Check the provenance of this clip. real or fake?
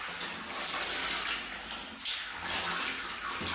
real